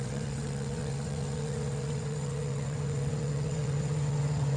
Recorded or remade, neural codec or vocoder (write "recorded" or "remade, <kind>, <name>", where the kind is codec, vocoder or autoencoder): remade, vocoder, WaveNeXt